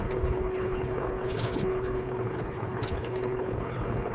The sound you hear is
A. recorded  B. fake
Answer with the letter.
B